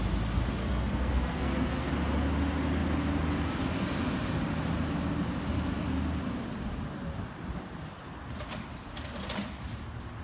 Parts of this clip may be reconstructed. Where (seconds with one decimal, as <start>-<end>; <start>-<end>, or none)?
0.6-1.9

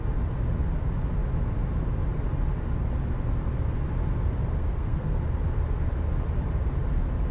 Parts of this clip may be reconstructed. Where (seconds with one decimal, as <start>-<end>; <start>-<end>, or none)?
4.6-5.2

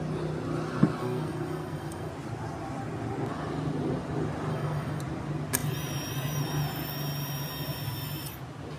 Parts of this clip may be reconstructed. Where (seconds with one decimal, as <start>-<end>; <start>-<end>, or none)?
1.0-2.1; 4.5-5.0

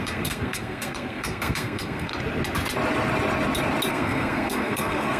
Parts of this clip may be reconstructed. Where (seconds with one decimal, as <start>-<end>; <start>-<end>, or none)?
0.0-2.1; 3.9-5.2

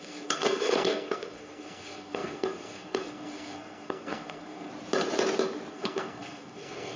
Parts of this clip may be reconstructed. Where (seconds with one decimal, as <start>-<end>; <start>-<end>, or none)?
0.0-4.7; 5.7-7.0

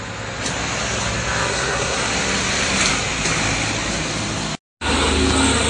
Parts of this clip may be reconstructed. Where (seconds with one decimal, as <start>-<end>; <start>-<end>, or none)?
1.5-2.1